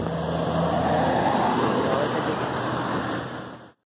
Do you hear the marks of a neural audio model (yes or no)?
no